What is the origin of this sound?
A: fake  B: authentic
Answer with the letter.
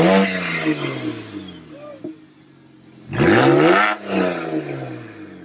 B